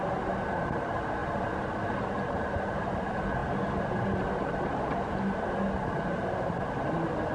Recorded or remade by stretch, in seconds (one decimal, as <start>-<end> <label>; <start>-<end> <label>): 0.0-7.3 recorded